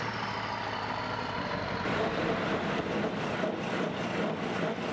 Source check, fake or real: real